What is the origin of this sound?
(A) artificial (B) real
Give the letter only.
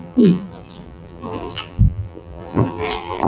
A